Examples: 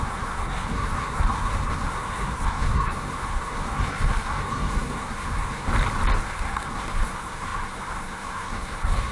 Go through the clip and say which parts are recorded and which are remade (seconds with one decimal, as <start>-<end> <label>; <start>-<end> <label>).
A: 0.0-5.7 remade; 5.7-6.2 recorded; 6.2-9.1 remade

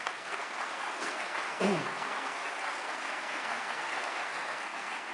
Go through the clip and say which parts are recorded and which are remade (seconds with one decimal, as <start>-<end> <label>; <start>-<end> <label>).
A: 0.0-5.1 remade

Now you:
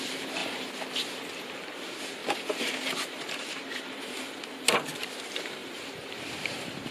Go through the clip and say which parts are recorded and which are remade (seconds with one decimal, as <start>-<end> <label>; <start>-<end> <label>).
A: 0.0-6.9 remade

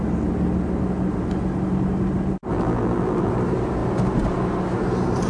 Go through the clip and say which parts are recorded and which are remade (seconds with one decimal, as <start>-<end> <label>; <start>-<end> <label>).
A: 0.0-2.5 recorded; 2.5-3.3 remade; 3.3-5.3 recorded

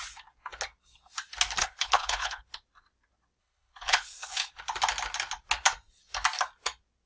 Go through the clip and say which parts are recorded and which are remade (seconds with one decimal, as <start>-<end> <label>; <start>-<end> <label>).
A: 0.0-1.6 recorded; 1.6-2.4 remade; 2.4-3.4 recorded; 3.4-4.5 remade; 4.5-7.1 recorded

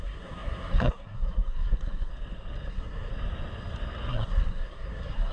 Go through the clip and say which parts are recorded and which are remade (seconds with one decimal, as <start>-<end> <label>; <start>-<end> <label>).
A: 0.0-2.1 remade; 2.1-2.7 recorded; 2.7-3.1 remade; 3.1-4.1 recorded; 4.1-5.3 remade

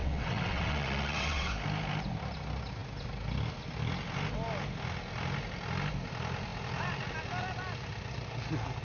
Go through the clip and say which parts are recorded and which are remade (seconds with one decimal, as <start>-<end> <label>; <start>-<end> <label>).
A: 0.0-1.5 remade; 1.5-8.8 recorded